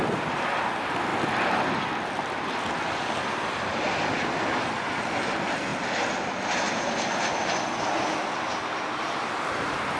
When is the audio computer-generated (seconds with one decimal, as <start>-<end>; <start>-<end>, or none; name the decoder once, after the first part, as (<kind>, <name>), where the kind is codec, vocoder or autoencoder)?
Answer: none